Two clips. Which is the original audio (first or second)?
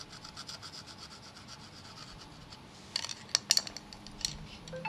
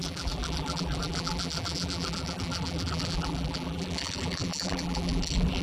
first